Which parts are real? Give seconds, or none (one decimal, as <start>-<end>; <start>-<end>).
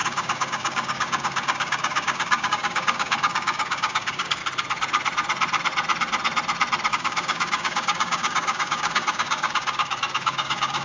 4.4-6.9